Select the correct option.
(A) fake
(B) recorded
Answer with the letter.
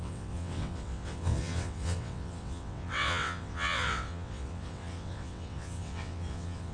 A